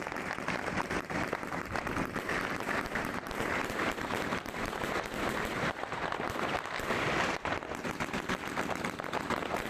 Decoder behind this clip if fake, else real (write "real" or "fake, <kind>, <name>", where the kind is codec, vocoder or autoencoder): real